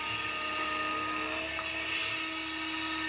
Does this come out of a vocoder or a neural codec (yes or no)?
no